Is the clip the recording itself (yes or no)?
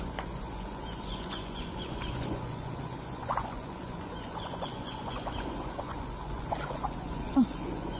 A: no